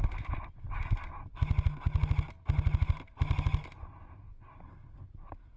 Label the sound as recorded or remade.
recorded